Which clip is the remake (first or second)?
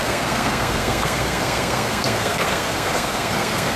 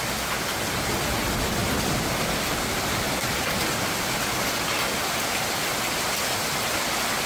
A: first